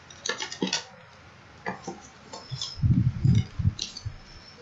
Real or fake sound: real